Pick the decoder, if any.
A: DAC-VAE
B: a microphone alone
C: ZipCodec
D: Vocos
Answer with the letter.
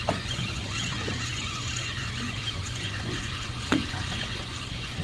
D